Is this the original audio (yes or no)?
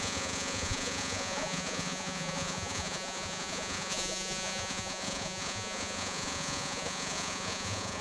no